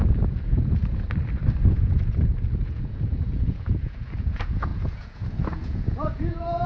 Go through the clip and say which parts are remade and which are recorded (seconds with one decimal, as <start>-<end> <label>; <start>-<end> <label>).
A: 0.0-0.8 remade; 0.8-1.7 recorded; 1.7-6.7 remade